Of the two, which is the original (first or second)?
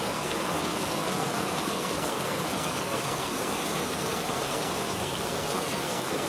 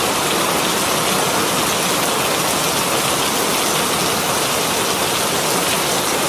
second